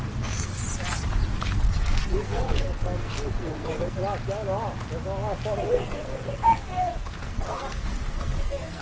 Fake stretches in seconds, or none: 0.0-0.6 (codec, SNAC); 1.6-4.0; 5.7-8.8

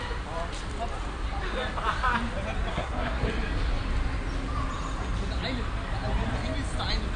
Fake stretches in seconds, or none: 2.7-3.3 (codec, SNAC)

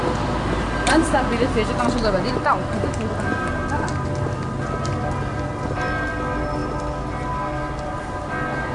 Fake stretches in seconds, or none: none

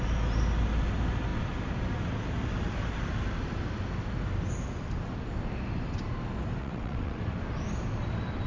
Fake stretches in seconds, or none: 6.6-7.2 (vocoder, WaveNeXt)

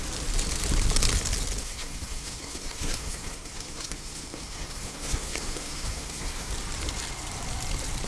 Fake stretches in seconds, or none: 1.6-6.5 (codec, SNAC)